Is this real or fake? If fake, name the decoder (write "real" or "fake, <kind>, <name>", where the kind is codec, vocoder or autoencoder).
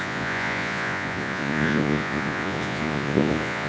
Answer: fake, vocoder, Vocos